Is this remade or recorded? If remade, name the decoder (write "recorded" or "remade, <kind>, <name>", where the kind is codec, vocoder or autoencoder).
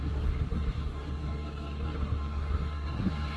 remade, codec, SNAC